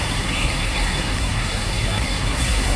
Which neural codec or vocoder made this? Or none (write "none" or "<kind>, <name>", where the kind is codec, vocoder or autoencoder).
codec, SNAC